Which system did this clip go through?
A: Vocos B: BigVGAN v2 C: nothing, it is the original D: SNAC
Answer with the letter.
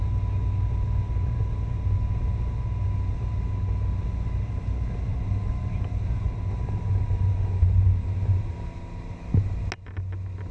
C